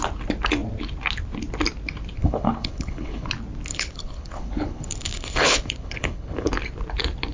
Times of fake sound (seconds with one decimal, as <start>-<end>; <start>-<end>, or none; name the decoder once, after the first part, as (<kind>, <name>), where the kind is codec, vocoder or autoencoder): 2.2-3.3 (codec, HILCodec); 3.7-6.5